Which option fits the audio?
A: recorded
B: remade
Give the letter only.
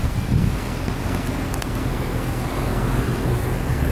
B